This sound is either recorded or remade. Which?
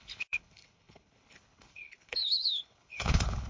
remade